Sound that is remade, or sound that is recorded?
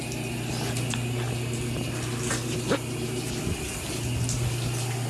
recorded